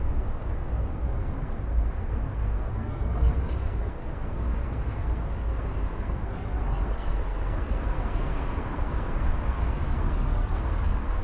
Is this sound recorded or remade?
remade